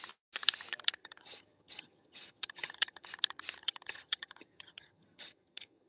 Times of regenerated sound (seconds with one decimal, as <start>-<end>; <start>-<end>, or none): 1.0-3.1; 3.6-5.9

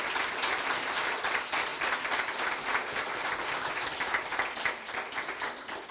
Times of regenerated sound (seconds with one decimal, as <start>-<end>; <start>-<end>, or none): none

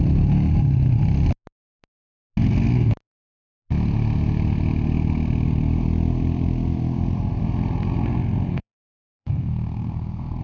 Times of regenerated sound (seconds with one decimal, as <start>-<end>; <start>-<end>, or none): 8.5-10.4

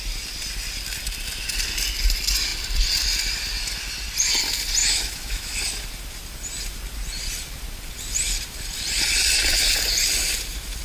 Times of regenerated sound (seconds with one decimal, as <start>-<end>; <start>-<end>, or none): 4.8-5.6

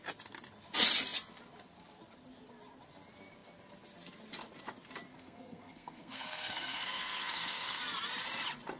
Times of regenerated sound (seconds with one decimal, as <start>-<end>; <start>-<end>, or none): 5.1-7.8

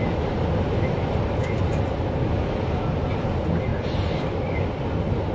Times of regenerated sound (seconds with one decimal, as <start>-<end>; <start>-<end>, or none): none

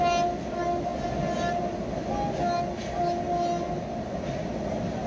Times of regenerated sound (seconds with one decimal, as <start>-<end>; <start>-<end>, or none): none